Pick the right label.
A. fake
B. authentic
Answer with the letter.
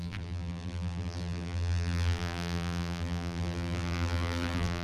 A